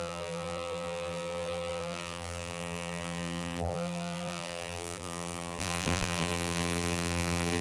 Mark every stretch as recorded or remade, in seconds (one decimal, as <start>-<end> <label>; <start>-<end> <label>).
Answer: 0.0-7.6 remade